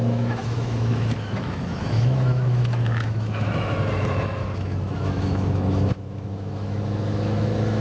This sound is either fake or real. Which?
fake